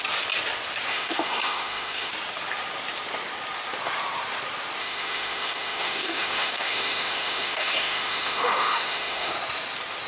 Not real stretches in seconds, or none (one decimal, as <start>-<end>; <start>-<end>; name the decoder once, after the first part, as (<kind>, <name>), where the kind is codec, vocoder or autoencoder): 0.9-2.1 (autoencoder, DAC-VAE); 4.8-9.3